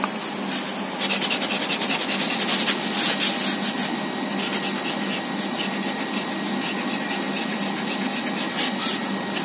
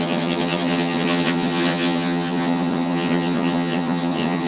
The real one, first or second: first